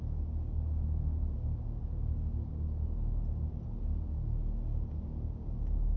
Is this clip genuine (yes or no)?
yes